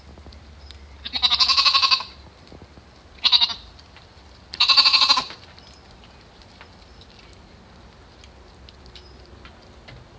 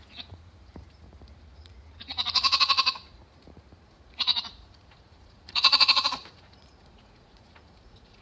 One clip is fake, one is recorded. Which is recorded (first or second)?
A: first